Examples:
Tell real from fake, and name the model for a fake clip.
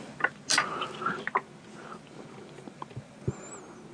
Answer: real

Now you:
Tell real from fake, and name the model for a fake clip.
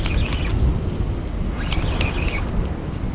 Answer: real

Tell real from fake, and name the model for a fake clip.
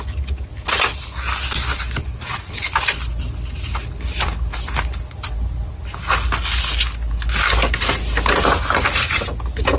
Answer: real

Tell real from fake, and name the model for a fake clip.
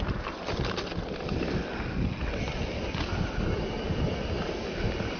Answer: real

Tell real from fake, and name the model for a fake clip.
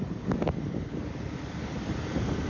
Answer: real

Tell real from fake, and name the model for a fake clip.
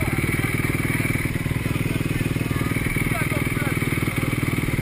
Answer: real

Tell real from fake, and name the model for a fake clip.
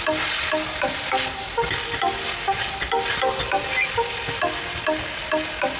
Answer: real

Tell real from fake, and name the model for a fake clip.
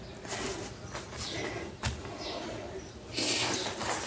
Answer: real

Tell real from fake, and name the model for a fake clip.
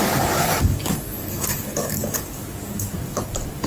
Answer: fake, codec, DAC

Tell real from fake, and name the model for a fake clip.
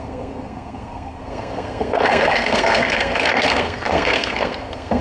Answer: fake, codec, SNAC